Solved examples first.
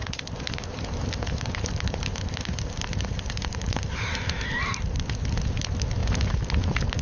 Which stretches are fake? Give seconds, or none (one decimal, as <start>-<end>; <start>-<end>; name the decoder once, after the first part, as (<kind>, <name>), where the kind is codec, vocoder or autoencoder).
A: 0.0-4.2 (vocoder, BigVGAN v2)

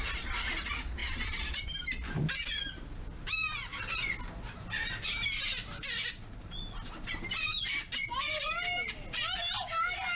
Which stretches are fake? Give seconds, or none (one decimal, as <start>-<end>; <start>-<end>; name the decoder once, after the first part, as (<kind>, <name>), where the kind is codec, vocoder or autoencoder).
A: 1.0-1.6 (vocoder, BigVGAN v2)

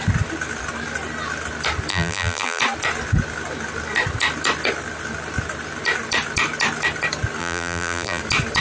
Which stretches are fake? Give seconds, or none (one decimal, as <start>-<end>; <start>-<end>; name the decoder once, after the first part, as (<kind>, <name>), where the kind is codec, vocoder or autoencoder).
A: 1.9-2.6 (vocoder, BigVGAN v2); 7.4-8.2

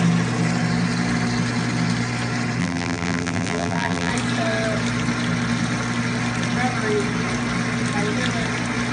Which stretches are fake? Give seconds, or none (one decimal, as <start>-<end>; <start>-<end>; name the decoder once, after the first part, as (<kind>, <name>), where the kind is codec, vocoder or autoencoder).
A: 2.6-4.1 (vocoder, BigVGAN v2)

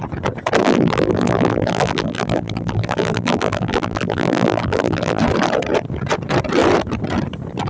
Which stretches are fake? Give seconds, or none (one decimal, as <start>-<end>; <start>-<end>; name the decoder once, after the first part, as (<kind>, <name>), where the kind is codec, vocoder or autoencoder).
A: 0.6-5.2 (vocoder, BigVGAN v2)

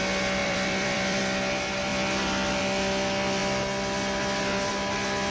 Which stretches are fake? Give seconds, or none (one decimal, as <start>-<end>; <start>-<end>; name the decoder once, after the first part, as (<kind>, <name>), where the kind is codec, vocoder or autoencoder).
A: 0.4-1.2 (vocoder, BigVGAN v2)

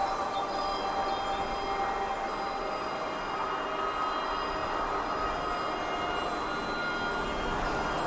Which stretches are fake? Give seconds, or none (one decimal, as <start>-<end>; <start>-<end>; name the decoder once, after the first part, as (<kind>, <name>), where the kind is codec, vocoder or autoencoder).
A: 0.0-0.5 (vocoder, BigVGAN v2)